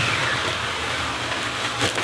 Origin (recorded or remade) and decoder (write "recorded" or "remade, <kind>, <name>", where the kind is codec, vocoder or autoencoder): recorded